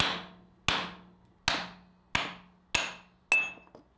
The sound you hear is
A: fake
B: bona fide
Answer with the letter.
B